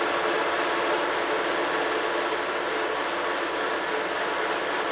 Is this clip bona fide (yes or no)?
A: yes